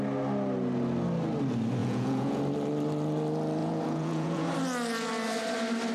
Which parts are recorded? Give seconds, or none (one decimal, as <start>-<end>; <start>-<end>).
0.0-1.8; 2.4-3.6; 4.5-5.9